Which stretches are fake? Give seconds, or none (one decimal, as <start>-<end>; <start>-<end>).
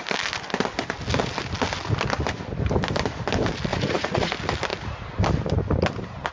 3.7-4.3